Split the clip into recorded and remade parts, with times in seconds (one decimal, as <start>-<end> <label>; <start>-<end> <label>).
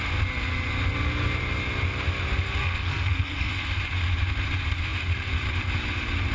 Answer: 0.0-2.6 recorded; 2.6-3.5 remade; 3.5-6.3 recorded